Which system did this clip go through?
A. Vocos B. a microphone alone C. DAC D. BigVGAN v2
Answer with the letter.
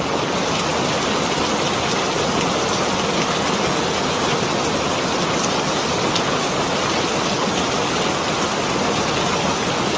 B